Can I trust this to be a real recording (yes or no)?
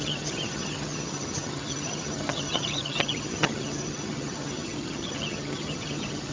no